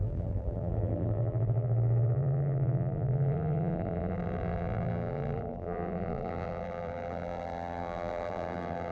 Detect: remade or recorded remade